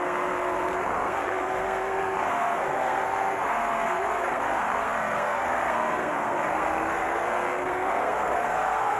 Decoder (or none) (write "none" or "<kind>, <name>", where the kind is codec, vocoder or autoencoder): codec, SNAC